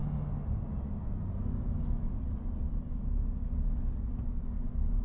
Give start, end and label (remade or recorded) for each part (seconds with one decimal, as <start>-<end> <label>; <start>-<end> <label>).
0.0-5.0 recorded